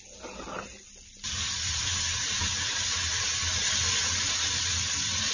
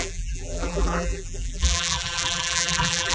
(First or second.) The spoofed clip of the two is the second